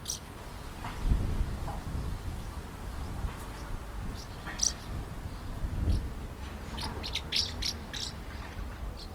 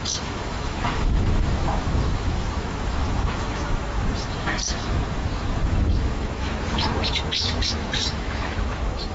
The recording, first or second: first